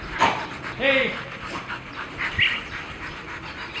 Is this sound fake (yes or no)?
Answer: no